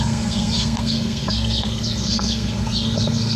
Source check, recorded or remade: remade